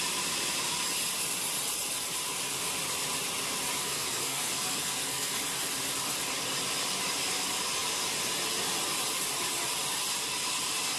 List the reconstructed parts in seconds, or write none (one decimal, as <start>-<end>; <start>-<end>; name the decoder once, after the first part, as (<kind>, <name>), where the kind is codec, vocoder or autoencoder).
3.8-5.4 (codec, SNAC)

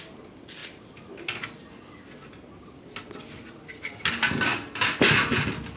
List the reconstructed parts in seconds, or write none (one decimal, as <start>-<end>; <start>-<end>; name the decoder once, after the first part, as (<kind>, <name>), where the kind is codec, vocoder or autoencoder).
none

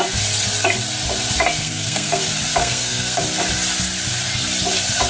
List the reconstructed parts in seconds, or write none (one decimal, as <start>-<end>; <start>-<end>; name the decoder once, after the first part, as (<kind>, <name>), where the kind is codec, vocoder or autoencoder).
1.6-2.2 (codec, SNAC); 2.6-3.2